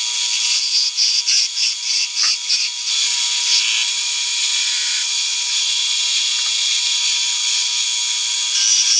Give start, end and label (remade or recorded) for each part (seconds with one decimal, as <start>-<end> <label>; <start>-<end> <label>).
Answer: 0.0-4.0 recorded; 4.0-6.2 remade; 6.2-9.0 recorded

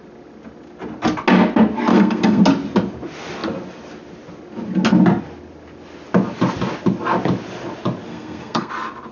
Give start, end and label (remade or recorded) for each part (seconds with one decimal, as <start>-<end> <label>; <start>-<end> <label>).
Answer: 0.0-1.9 recorded; 1.9-2.4 remade; 2.4-8.1 recorded; 8.1-8.7 remade; 8.7-9.1 recorded